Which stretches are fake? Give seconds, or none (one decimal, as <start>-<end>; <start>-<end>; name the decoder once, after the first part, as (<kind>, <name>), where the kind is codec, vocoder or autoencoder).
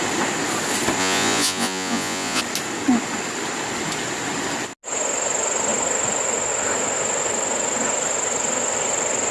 1.0-2.4 (vocoder, Vocos)